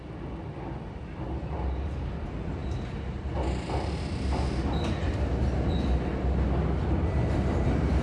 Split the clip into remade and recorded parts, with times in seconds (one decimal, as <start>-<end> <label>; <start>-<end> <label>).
0.0-8.0 recorded